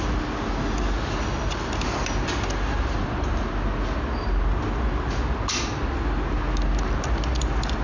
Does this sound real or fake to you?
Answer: real